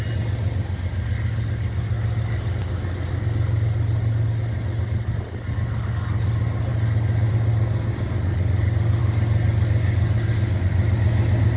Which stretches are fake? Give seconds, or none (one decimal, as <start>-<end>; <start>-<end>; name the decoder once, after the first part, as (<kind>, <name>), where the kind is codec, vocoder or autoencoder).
none